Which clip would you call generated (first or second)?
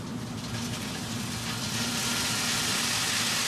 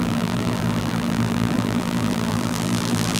second